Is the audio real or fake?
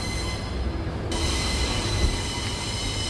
real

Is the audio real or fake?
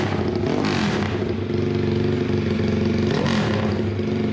real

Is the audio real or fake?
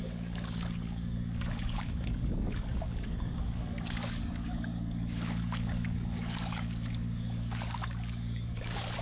fake